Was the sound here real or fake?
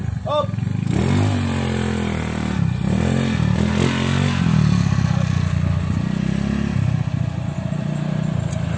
real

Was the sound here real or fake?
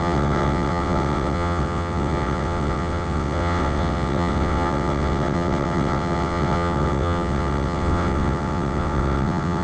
fake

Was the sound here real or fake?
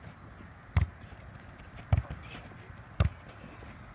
real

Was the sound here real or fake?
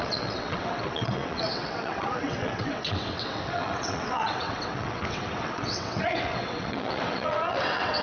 fake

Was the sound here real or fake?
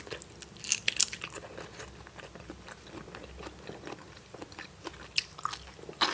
real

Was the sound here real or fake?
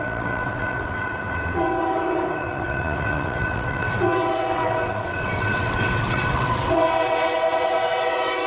fake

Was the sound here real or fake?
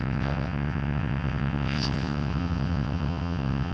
fake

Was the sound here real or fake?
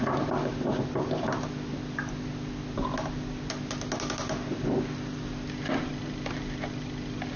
real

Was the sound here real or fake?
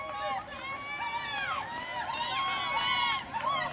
real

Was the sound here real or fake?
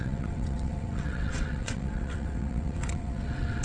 fake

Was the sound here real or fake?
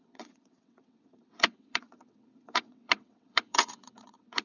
fake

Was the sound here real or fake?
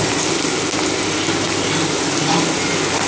real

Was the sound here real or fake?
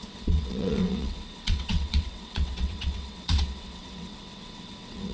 fake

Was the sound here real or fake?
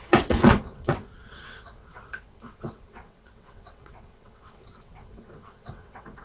fake